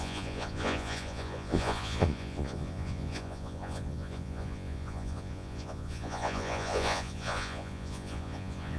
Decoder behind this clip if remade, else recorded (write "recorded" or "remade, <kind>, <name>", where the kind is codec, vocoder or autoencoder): remade, vocoder, Vocos